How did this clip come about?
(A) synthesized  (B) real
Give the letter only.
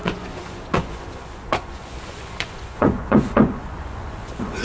A